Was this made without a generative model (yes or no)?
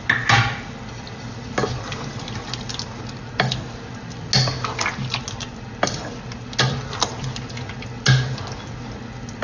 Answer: yes